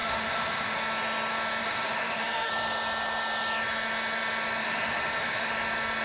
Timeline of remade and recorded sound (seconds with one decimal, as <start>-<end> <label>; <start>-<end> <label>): 0.0-0.8 remade; 0.8-1.6 recorded; 1.6-2.5 remade; 2.5-4.6 recorded; 4.6-5.5 remade; 5.5-6.0 recorded